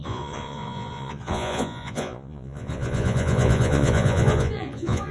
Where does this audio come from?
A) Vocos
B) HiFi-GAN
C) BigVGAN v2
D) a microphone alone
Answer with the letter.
A